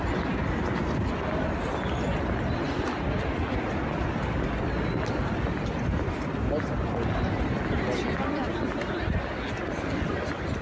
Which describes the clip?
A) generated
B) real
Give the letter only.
B